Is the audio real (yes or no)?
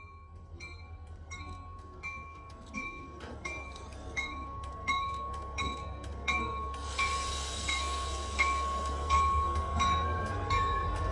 no